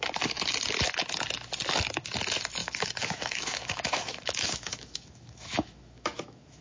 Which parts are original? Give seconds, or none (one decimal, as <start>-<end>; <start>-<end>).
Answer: 0.0-2.6